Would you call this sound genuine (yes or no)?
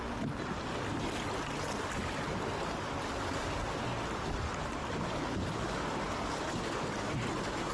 yes